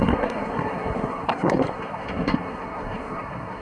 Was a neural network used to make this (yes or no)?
yes